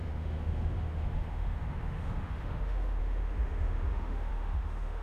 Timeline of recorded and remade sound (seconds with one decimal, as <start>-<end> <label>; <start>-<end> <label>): 0.0-5.0 remade